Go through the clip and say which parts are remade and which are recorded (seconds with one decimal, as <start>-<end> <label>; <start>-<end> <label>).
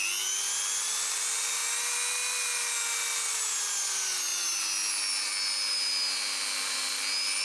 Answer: 0.0-7.4 recorded